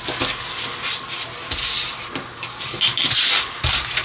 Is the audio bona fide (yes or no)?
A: yes